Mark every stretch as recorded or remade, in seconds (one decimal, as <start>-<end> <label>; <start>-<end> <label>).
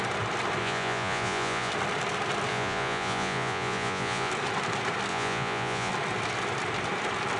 0.0-0.6 recorded; 0.6-1.7 remade; 1.7-2.5 recorded; 2.5-4.3 remade; 4.3-5.1 recorded; 5.1-5.9 remade; 5.9-7.4 recorded